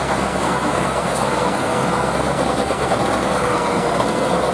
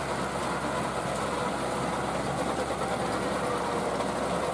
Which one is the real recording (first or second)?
second